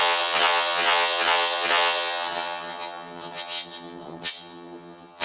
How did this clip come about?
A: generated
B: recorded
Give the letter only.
A